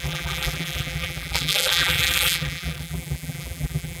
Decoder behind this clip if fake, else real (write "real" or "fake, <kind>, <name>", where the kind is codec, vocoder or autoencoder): fake, vocoder, BigVGAN v2